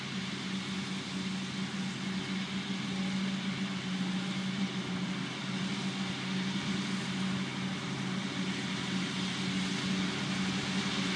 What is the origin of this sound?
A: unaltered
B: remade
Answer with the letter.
A